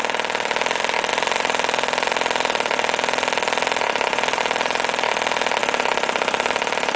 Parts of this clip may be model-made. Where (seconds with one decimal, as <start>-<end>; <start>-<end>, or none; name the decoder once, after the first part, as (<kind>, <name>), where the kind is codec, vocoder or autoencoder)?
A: 0.0-1.1 (vocoder, BigVGAN v2); 4.3-5.6; 6.5-7.0

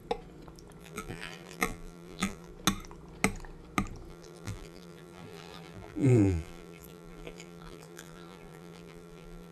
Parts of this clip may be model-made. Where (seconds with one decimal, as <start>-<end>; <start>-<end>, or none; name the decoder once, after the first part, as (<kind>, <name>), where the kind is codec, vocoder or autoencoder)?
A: 0.8-2.5 (vocoder, BigVGAN v2); 4.1-9.5

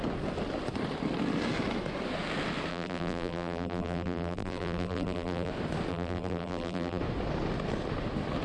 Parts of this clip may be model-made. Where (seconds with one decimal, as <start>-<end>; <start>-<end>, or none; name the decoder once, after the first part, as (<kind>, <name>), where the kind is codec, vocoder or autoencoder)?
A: 2.7-5.5 (vocoder, BigVGAN v2); 5.9-7.0

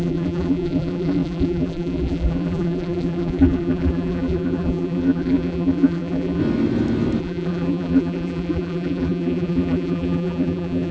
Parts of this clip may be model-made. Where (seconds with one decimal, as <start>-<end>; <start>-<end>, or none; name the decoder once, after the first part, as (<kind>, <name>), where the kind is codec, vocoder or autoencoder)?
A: 0.0-6.4 (vocoder, BigVGAN v2); 7.2-10.9

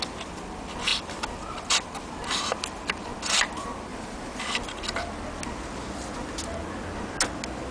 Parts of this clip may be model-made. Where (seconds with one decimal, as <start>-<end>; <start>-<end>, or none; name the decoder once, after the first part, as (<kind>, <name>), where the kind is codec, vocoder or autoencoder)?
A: 3.9-4.4 (vocoder, BigVGAN v2)

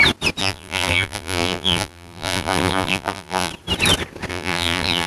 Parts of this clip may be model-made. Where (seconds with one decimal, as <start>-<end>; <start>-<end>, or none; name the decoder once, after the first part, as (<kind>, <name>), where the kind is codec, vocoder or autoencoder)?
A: 0.4-3.5 (vocoder, BigVGAN v2); 4.3-5.1

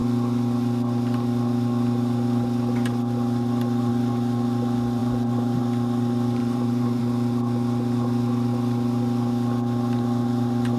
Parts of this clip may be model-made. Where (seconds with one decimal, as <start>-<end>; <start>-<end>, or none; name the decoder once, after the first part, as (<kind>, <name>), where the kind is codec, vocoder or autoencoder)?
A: 5.0-5.6 (vocoder, BigVGAN v2); 6.4-7.0

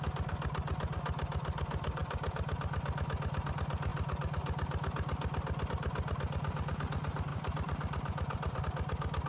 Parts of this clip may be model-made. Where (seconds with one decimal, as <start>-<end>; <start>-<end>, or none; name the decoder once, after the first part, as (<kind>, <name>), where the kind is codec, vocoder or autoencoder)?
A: 7.3-8.6 (vocoder, BigVGAN v2)